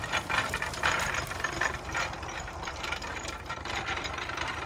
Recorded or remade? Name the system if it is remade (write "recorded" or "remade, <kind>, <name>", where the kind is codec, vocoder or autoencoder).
remade, vocoder, BigVGAN v2